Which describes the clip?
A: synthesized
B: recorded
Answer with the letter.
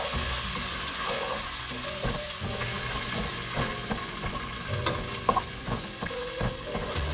A